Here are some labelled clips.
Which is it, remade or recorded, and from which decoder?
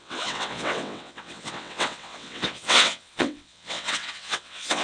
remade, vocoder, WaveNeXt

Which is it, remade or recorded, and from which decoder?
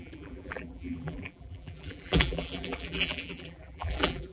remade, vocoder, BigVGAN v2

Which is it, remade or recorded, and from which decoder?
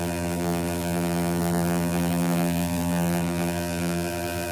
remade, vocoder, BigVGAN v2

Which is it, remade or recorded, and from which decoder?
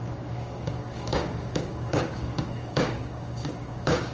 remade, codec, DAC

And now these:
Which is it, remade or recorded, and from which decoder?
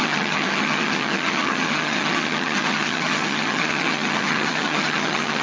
remade, vocoder, HiFi-GAN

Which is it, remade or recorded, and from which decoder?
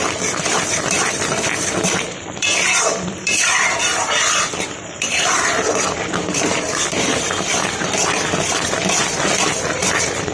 remade, vocoder, BigVGAN v2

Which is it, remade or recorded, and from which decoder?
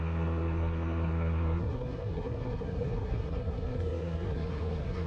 remade, codec, SNAC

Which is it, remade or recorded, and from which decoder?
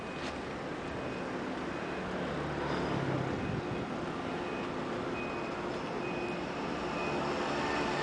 recorded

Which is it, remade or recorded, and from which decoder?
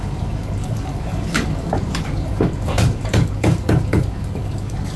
remade, codec, DAC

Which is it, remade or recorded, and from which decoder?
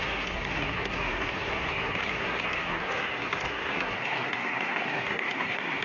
remade, codec, SNAC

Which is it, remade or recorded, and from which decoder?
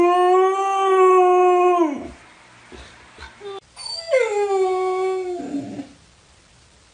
recorded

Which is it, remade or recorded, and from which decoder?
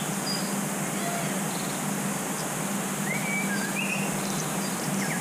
recorded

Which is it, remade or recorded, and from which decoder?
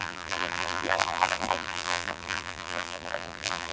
remade, vocoder, BigVGAN v2